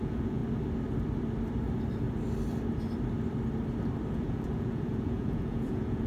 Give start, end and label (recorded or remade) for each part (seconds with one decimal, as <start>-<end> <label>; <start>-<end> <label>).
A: 0.0-0.4 remade; 0.4-4.1 recorded; 4.1-6.1 remade